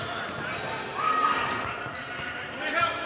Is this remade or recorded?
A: recorded